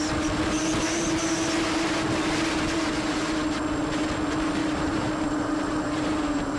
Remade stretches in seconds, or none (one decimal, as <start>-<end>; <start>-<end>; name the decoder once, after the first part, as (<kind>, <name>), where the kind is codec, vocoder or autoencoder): 4.6-6.6 (vocoder, BigVGAN v2)